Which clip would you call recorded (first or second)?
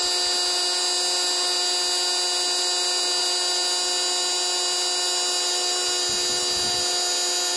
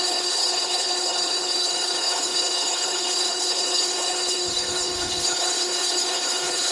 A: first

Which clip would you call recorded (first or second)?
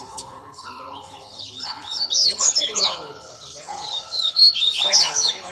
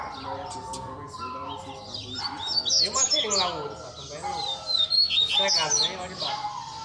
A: second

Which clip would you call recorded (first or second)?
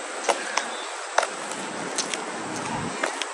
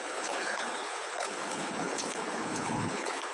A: first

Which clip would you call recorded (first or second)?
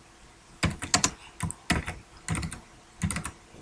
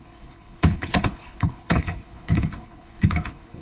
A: first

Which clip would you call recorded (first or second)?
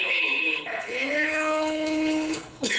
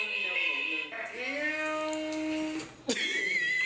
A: second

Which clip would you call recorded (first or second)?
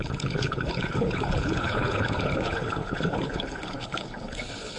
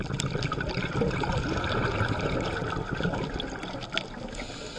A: second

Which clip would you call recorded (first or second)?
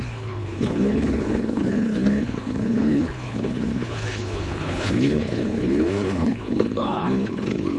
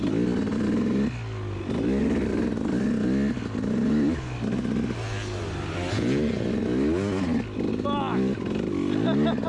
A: second